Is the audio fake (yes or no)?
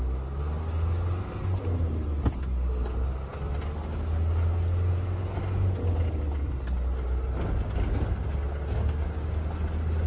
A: no